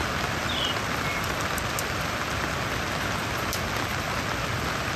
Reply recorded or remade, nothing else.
recorded